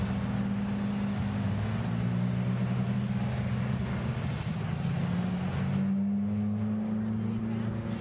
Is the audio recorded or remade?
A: recorded